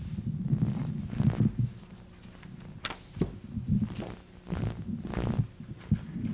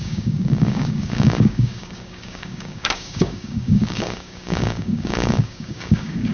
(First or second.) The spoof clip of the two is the second